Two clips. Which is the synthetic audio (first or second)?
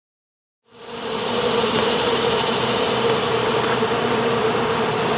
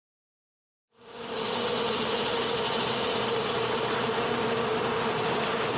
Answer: first